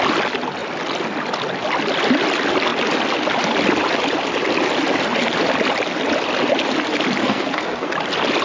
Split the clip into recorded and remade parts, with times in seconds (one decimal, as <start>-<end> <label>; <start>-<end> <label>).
0.0-7.2 recorded; 7.2-7.9 remade; 7.9-8.4 recorded

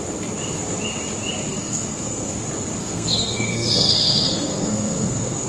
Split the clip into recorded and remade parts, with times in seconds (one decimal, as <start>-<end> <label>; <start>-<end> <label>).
0.0-1.5 recorded; 1.5-2.3 remade; 2.3-2.8 recorded; 2.8-5.5 remade

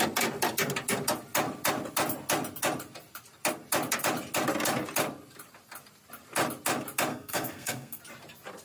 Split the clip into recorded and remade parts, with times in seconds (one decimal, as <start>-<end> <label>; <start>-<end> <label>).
0.0-7.1 recorded; 7.1-8.0 remade; 8.0-8.6 recorded

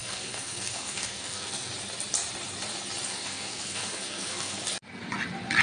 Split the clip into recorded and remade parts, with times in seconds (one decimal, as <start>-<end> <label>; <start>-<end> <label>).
0.0-1.7 remade; 1.7-3.1 recorded; 3.1-4.6 remade; 4.6-5.6 recorded

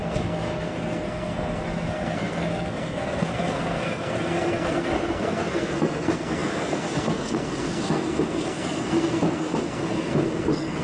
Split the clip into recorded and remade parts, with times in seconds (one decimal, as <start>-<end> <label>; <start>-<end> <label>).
0.0-10.8 remade

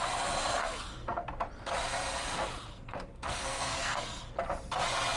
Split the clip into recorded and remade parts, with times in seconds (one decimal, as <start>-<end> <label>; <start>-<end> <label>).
0.0-0.6 recorded; 0.6-1.3 remade; 1.3-2.7 recorded; 2.7-4.3 remade; 4.3-5.2 recorded